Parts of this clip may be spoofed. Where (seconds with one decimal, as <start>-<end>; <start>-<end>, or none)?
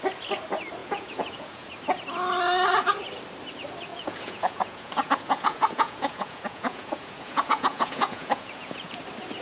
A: 0.8-1.7; 3.9-9.0